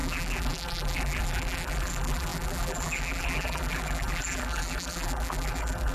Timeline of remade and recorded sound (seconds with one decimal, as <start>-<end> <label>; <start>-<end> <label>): 0.0-5.9 remade